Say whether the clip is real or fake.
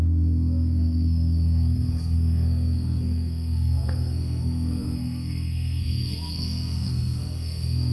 fake